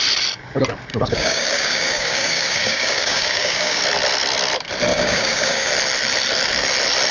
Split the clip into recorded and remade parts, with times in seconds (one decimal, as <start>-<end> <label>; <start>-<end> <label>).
0.0-0.9 recorded; 0.9-3.8 remade; 3.8-4.9 recorded; 4.9-5.7 remade; 5.7-7.1 recorded

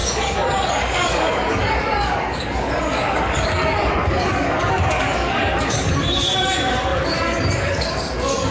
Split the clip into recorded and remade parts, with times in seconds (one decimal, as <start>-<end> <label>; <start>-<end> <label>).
0.0-8.5 remade